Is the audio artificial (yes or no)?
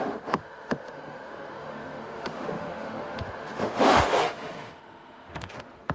yes